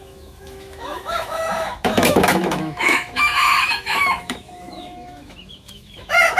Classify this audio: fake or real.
fake